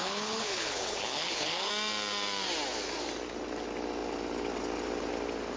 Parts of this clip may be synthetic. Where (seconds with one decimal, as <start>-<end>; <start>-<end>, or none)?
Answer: 0.0-1.7